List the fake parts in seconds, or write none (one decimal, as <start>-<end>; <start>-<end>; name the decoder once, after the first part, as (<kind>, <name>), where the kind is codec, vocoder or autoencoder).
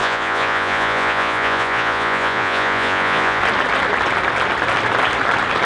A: 0.0-3.4 (vocoder, Vocos)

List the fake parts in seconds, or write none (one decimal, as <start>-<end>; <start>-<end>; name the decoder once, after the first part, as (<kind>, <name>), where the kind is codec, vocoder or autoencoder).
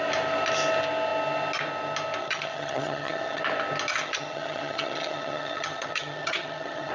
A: 2.2-3.4 (vocoder, HiFi-GAN); 3.9-6.9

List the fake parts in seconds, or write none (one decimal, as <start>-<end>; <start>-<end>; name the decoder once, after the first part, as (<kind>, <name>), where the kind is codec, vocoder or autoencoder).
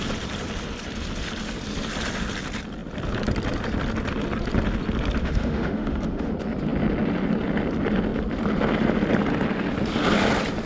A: 5.2-6.3 (autoencoder, DAC-VAE)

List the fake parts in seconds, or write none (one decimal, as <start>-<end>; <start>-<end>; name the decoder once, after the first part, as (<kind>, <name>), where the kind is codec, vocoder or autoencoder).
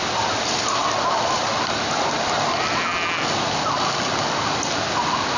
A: none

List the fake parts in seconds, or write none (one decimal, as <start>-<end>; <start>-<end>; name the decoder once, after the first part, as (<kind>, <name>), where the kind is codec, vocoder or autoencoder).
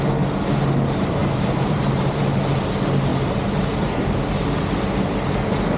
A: 1.2-2.2 (vocoder, BigVGAN v2); 3.1-4.0